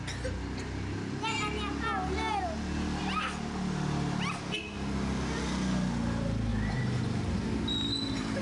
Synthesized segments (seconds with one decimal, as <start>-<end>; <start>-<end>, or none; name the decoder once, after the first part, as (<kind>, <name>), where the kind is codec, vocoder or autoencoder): none